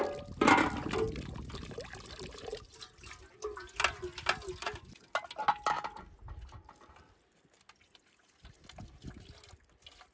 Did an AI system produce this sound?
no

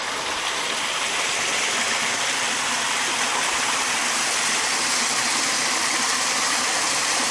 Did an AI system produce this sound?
no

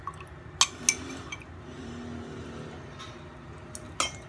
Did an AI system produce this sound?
no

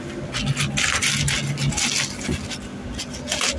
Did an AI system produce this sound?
no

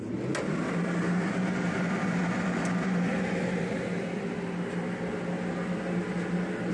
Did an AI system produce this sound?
no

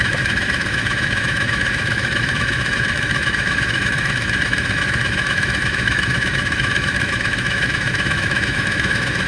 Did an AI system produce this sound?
yes